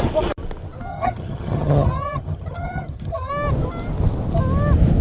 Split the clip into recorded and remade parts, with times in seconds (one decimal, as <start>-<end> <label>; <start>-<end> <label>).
0.0-0.9 recorded; 0.9-3.3 remade; 3.3-5.0 recorded